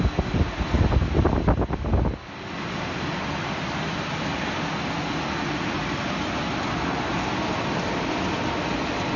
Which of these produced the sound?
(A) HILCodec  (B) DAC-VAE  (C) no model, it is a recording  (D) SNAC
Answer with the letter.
C